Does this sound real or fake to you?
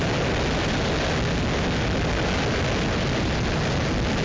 real